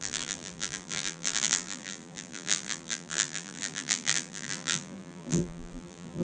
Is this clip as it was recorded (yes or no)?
no